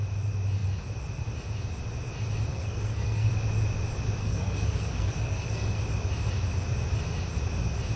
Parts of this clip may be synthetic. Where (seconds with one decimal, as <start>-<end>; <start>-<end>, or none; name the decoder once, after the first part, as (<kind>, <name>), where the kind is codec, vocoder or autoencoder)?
2.5-3.3 (codec, SNAC); 4.2-5.8